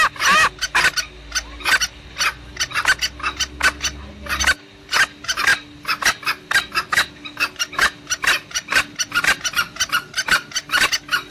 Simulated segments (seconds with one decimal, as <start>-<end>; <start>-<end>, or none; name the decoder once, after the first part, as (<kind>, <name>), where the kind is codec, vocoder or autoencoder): none